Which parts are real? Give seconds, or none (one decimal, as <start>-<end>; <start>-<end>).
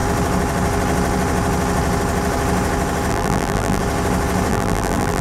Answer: 0.0-3.1; 3.8-4.5